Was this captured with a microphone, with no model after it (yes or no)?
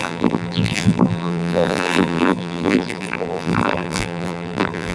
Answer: no